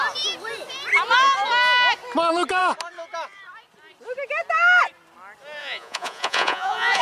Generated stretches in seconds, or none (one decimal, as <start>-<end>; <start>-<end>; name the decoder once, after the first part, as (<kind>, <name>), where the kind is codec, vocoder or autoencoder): 5.6-7.0 (vocoder, Vocos)